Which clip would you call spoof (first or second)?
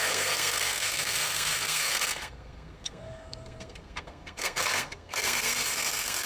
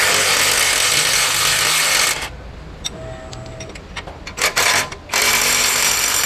first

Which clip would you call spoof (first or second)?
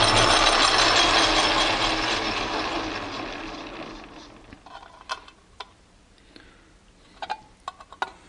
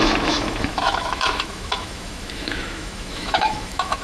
second